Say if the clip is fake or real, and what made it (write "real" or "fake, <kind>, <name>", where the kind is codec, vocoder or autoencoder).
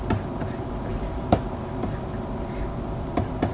fake, vocoder, BigVGAN v2